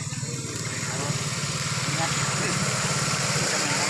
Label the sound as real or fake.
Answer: real